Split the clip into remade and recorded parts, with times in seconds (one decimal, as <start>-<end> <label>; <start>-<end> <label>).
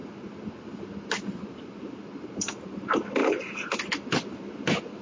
0.0-2.3 recorded; 2.3-3.2 remade; 3.2-3.8 recorded; 3.8-5.0 remade